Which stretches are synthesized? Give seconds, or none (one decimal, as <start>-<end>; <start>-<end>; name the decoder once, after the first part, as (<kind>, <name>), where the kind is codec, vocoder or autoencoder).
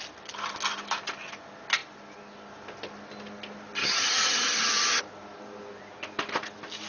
3.8-5.0 (vocoder, HiFi-GAN)